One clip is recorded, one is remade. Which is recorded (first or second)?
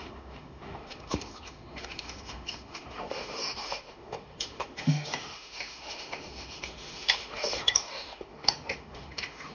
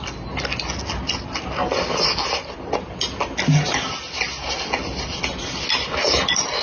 second